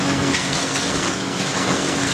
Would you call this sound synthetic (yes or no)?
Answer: yes